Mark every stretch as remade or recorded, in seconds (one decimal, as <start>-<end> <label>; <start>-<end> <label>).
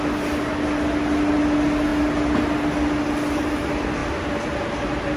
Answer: 0.0-5.2 recorded